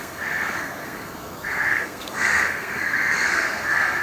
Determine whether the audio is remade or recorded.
remade